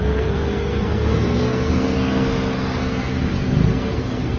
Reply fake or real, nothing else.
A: fake